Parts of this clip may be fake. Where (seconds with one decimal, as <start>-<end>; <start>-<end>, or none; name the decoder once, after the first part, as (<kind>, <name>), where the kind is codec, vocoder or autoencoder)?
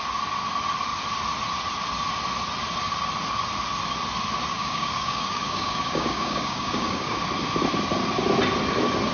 4.5-7.2 (codec, DAC)